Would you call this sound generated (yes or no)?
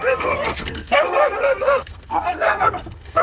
yes